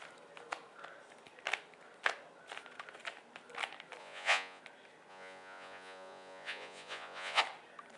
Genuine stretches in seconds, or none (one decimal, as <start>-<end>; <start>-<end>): 0.0-4.0; 4.6-5.1; 7.4-8.0